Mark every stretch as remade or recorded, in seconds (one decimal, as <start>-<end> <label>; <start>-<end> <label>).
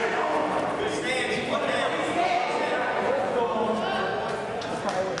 0.0-1.9 recorded; 1.9-3.4 remade; 3.4-4.1 recorded; 4.1-4.7 remade; 4.7-5.2 recorded